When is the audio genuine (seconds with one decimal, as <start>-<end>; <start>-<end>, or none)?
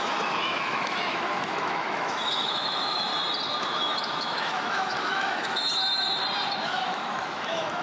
3.1-3.6; 5.7-6.6